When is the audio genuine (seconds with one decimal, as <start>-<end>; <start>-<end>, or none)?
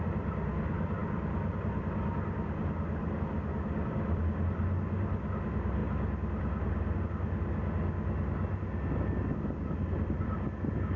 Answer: 0.0-11.0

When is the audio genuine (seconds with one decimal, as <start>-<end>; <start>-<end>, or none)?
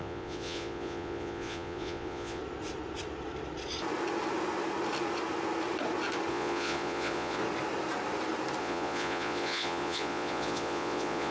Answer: 2.4-6.3; 7.4-8.6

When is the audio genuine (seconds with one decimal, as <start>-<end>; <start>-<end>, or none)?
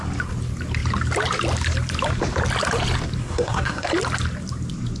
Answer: 0.0-3.2; 3.9-5.0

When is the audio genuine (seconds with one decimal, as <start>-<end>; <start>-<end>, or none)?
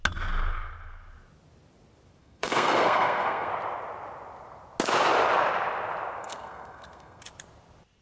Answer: 0.0-2.2; 3.5-6.2; 7.2-8.0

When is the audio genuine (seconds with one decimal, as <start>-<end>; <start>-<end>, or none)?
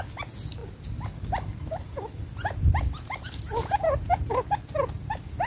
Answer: 0.0-5.5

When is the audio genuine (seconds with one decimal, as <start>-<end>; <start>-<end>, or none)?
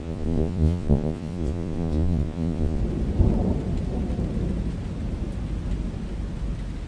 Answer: 2.8-6.9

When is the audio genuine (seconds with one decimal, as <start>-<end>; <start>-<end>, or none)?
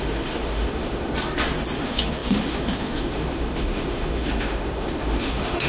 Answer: 1.1-1.8